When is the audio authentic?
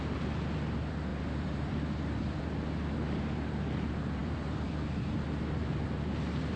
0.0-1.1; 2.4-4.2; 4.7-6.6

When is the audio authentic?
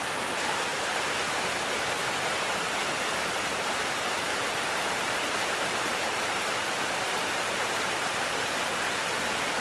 0.0-0.7; 1.4-3.5; 8.6-9.6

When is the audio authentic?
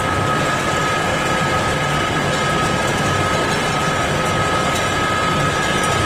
0.0-6.1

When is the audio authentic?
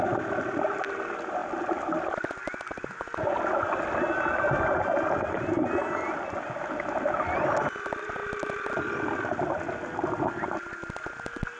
0.0-11.6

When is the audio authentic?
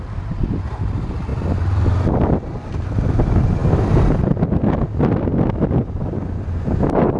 0.0-7.2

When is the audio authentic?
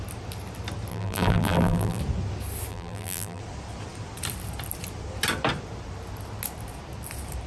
0.0-0.9; 2.0-2.7; 3.4-7.5